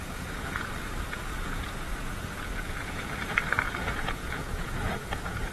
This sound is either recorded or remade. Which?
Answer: remade